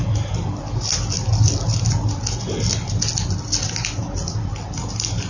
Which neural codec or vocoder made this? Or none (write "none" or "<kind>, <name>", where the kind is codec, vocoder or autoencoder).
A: none